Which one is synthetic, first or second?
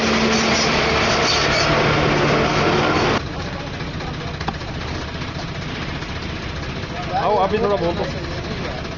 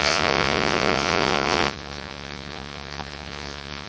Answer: second